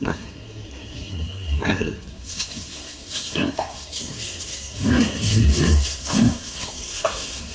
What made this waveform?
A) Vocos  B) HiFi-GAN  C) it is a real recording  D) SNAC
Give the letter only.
D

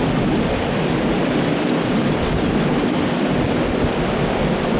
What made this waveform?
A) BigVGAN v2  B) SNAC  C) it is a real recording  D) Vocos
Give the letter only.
C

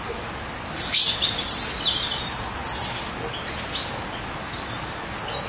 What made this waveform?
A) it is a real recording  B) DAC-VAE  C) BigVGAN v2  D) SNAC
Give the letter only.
A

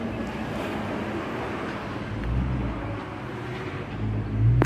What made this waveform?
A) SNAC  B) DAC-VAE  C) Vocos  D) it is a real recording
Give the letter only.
D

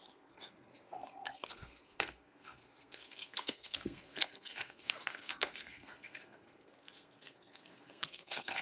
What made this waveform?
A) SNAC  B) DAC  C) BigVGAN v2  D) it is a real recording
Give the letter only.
A